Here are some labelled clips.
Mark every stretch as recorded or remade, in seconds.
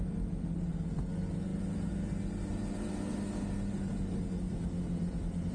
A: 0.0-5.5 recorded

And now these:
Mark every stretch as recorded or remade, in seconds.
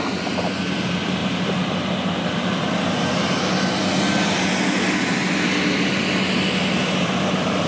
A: 0.0-7.7 recorded